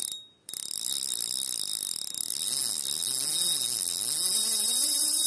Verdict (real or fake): real